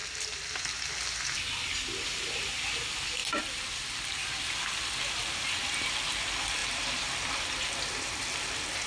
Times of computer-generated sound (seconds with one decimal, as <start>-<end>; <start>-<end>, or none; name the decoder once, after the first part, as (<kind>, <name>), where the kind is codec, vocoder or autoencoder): none